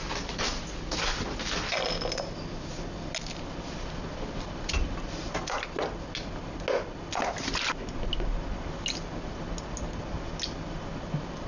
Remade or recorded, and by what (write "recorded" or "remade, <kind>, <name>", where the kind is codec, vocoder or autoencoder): recorded